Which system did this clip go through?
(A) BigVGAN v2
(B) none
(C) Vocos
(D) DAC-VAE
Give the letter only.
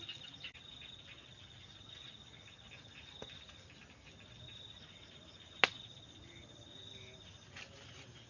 B